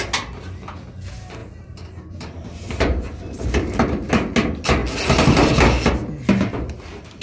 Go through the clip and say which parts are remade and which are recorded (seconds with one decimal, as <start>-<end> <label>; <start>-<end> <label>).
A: 0.0-1.4 recorded; 1.4-4.1 remade; 4.1-7.2 recorded